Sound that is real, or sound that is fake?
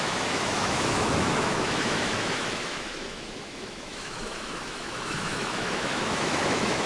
fake